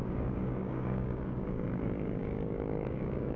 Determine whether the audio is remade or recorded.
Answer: remade